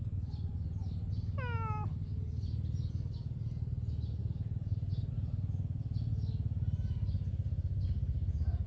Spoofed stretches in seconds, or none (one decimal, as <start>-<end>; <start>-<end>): none